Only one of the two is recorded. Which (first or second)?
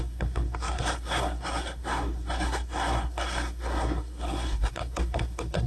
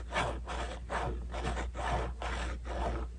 second